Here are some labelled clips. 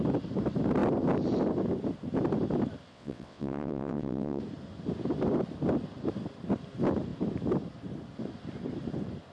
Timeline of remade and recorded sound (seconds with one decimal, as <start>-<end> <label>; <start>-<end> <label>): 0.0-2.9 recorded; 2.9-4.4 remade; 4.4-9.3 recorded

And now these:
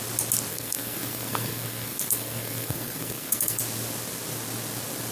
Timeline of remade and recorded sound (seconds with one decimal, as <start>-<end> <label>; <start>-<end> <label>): 0.0-0.5 recorded; 0.5-3.6 remade; 3.6-5.1 recorded

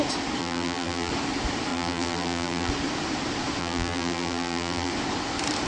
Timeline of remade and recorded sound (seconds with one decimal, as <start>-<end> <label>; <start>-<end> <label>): 0.0-0.4 recorded; 0.4-1.1 remade; 1.1-1.7 recorded; 1.7-2.7 remade; 2.7-3.6 recorded; 3.6-4.9 remade; 4.9-5.7 recorded